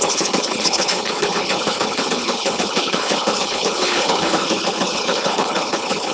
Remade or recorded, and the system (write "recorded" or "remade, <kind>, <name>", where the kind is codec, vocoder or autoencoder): remade, codec, HILCodec